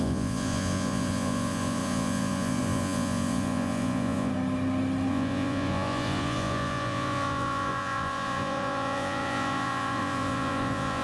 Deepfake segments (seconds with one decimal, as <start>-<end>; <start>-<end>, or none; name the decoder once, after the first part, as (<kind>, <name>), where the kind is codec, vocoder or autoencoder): 0.0-4.3 (vocoder, Vocos); 5.1-11.0